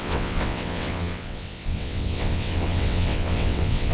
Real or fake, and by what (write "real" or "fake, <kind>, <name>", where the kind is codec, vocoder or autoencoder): fake, vocoder, WaveNeXt